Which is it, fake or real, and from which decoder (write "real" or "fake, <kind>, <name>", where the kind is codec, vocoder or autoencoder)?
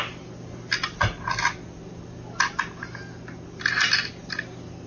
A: real